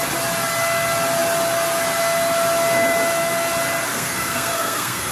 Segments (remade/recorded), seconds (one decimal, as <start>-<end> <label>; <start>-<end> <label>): 0.0-3.9 recorded; 3.9-5.1 remade